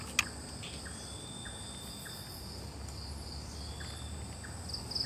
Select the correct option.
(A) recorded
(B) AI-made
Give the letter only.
A